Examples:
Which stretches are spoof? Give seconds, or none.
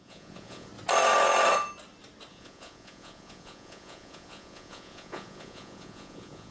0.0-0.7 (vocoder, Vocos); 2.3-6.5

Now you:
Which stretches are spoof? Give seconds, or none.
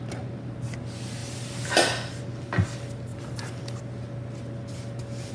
1.2-2.2 (vocoder, BigVGAN v2); 3.1-3.8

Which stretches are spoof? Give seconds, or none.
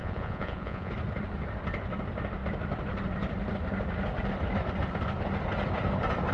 0.0-0.9 (vocoder, Vocos)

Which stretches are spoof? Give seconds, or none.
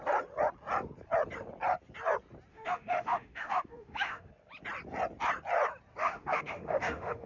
2.5-4.3 (autoencoder, DAC-VAE); 6.0-7.3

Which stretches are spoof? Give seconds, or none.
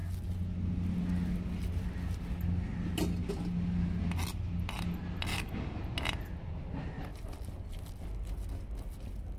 5.3-5.8 (codec, DAC)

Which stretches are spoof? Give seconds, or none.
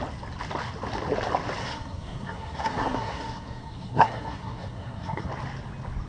1.6-5.3 (codec, SNAC)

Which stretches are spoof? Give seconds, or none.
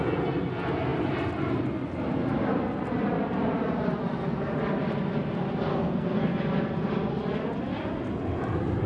5.7-6.4 (codec, SNAC)